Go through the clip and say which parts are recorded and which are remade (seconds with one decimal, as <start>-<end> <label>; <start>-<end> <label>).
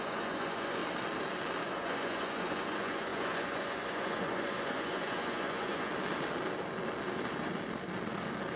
0.0-0.8 remade; 0.8-1.6 recorded; 1.6-5.9 remade; 5.9-8.6 recorded